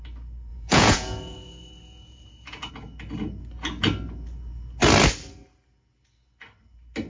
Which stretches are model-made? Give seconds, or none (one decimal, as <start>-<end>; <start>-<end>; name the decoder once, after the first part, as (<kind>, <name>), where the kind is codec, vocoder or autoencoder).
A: 0.5-2.7 (vocoder, Vocos)